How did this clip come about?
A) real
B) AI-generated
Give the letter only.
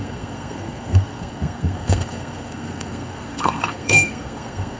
B